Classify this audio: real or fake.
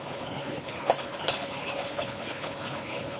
fake